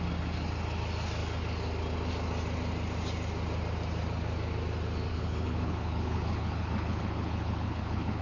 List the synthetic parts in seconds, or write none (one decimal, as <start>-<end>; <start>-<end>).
5.1-8.2